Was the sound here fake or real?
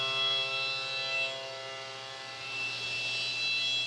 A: real